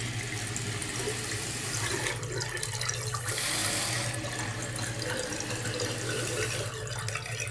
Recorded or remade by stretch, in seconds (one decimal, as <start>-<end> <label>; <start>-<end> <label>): 0.0-0.8 recorded; 0.8-2.1 remade; 2.1-7.5 recorded